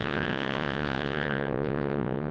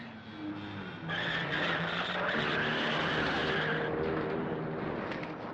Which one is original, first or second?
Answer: second